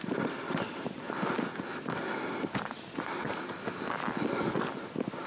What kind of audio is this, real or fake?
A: real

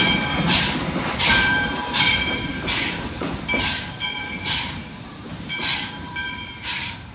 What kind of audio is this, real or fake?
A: fake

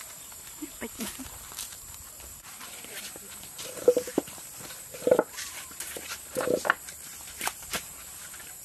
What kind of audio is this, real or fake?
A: fake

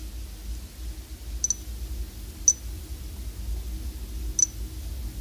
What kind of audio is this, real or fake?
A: real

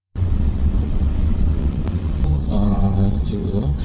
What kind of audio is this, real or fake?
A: fake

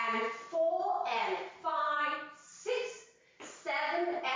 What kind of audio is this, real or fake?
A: real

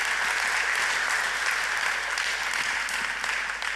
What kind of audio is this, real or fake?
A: real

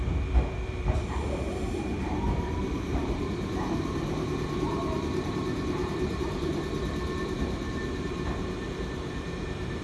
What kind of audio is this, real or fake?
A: fake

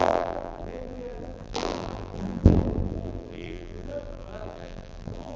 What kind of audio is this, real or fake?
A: fake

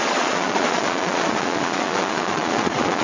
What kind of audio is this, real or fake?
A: fake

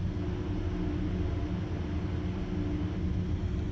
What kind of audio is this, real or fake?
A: real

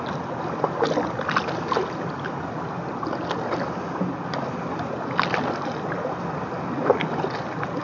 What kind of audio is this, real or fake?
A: real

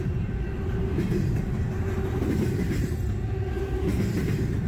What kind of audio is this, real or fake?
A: real